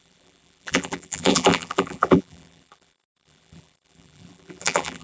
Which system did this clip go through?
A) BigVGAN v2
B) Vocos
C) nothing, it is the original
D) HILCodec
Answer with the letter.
A